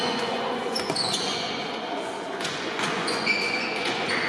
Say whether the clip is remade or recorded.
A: remade